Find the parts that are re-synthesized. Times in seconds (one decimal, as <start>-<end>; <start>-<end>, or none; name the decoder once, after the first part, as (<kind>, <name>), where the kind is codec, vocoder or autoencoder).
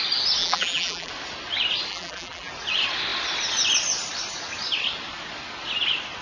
0.4-1.1 (vocoder, BigVGAN v2); 1.9-2.5